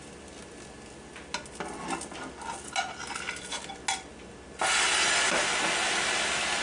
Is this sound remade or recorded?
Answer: recorded